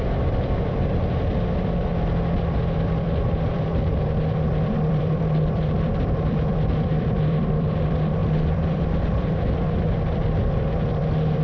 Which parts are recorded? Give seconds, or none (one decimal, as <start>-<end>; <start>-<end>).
1.9-2.8